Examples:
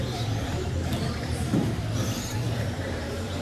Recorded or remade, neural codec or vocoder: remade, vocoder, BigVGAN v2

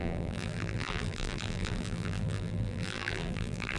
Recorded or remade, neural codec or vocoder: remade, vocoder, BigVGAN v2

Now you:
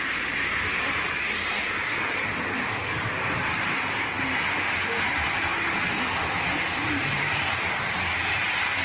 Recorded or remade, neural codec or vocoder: remade, vocoder, BigVGAN v2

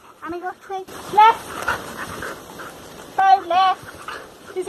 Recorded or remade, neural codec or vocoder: remade, vocoder, BigVGAN v2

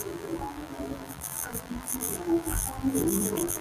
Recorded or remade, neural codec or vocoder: remade, vocoder, BigVGAN v2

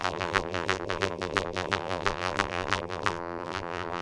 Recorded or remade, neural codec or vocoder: remade, vocoder, BigVGAN v2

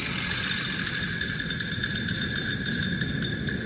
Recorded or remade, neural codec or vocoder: recorded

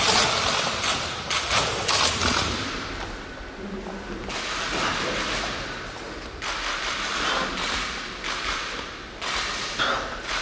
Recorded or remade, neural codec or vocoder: recorded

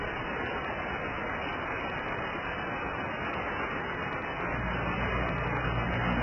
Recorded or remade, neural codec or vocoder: recorded